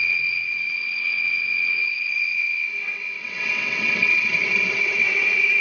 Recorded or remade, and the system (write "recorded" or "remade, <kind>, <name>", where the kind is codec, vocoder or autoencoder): remade, vocoder, WaveNeXt